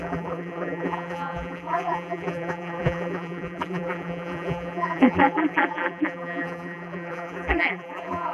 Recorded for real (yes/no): no